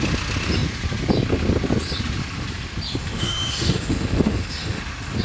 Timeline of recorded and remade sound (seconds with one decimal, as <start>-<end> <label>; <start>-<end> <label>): 0.0-3.0 recorded; 3.0-4.8 remade; 4.8-5.2 recorded